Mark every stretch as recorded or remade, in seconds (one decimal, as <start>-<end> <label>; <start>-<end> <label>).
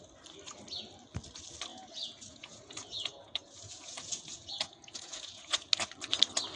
0.0-1.7 recorded; 1.7-5.7 remade; 5.7-6.6 recorded